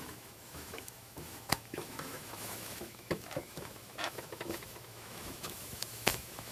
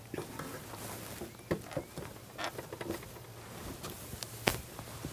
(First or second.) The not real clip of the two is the first